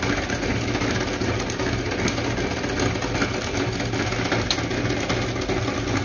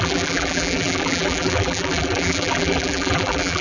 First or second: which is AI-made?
second